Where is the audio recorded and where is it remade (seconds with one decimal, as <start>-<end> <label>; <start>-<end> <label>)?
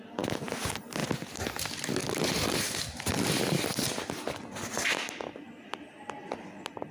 0.0-6.9 recorded